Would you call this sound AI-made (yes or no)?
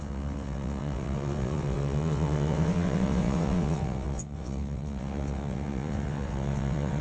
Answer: yes